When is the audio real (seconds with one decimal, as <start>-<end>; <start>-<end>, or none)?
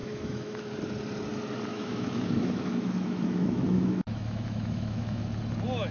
0.7-1.7; 5.2-5.9